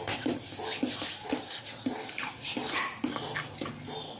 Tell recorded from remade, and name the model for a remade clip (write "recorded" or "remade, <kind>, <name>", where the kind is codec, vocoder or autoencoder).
recorded